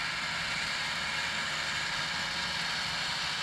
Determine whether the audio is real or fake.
real